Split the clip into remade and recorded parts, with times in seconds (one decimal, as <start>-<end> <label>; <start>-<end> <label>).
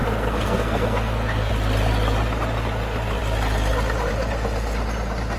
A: 0.0-1.5 remade; 1.5-5.4 recorded